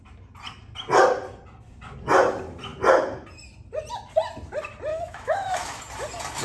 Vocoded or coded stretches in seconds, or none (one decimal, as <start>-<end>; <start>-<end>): 4.9-5.8